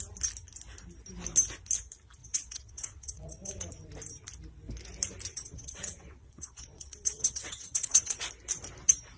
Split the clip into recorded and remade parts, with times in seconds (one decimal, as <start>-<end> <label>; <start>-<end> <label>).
0.0-2.2 recorded; 2.2-3.7 remade; 3.7-5.3 recorded; 5.3-8.2 remade; 8.2-9.2 recorded